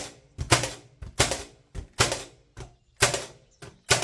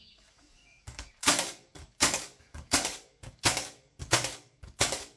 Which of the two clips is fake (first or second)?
second